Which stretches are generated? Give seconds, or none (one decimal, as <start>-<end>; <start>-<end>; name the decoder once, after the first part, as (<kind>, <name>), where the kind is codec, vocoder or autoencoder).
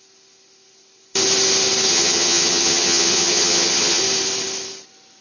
1.9-4.0 (vocoder, HiFi-GAN)